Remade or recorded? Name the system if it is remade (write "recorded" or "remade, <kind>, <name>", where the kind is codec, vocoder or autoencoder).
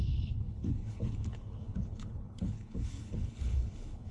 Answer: remade, codec, HILCodec